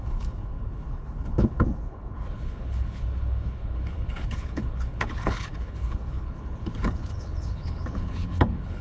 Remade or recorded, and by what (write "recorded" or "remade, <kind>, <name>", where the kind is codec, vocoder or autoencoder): remade, codec, HILCodec